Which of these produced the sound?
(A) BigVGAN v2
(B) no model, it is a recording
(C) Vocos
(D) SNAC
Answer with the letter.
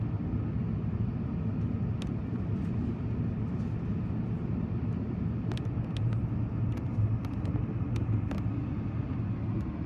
B